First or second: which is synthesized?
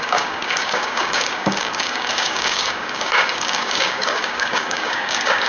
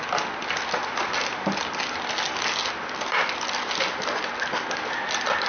first